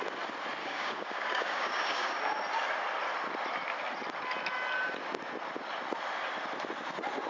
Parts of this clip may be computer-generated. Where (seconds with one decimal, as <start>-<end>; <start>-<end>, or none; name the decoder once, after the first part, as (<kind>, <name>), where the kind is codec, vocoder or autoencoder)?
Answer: 0.6-2.2 (codec, DAC)